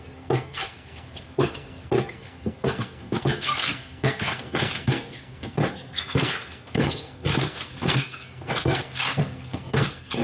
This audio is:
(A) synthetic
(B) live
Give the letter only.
A